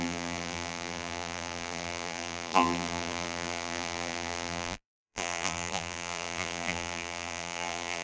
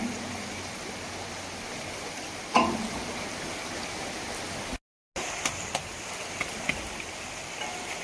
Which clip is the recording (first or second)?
second